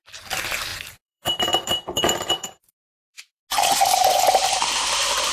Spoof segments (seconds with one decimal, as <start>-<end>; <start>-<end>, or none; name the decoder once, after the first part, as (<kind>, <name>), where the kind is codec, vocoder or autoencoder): 0.0-3.4 (vocoder, BigVGAN v2); 4.0-5.3

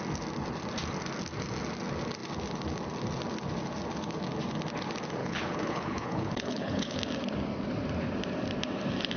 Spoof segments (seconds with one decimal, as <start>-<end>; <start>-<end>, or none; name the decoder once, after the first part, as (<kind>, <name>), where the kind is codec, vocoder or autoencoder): 5.2-7.0 (codec, HILCodec)

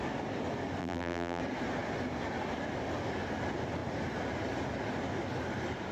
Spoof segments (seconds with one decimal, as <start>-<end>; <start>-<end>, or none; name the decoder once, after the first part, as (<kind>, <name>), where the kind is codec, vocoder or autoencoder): 0.8-1.4 (vocoder, BigVGAN v2)

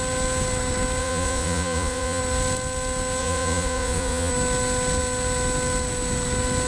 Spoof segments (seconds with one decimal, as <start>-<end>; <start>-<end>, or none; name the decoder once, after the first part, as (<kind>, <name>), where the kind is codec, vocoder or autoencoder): 1.0-2.2 (vocoder, Vocos); 3.2-4.3

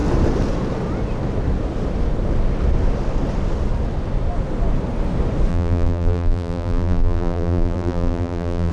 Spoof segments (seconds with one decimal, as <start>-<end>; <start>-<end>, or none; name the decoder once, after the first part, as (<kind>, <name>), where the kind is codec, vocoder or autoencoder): 5.5-8.7 (vocoder, BigVGAN v2)

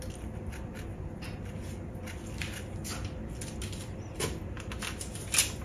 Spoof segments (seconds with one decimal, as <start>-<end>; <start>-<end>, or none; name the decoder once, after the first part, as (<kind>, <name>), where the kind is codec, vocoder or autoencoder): none